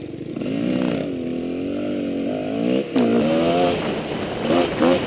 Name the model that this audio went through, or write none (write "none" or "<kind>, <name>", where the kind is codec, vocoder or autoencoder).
none